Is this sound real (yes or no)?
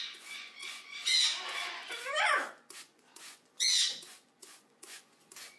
no